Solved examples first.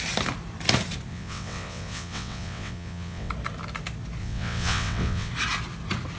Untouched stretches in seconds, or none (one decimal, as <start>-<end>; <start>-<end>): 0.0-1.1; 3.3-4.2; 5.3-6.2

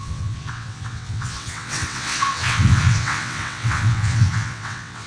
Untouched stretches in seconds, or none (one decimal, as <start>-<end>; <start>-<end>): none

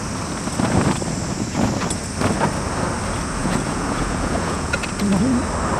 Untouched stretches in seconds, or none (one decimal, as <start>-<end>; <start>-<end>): 0.0-3.4; 4.8-5.8

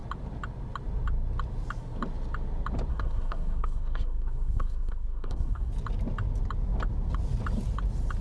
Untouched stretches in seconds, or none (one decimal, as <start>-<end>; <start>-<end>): 0.0-2.9; 5.7-8.2

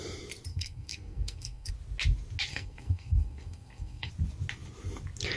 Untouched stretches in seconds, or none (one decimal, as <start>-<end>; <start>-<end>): 0.0-0.5; 1.7-2.5; 4.1-5.4

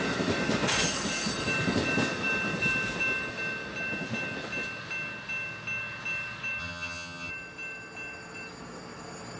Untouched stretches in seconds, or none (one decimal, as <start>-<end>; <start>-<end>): 0.0-6.6; 7.3-9.4